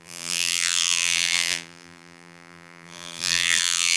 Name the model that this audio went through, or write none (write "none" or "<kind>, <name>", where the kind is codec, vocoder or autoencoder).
vocoder, BigVGAN v2